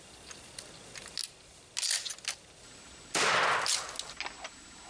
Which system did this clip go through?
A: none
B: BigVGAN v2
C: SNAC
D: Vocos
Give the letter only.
A